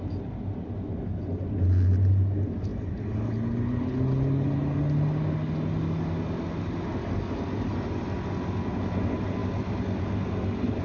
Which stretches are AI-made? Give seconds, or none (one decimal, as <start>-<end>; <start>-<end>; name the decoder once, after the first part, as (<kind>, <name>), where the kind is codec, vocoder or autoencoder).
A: none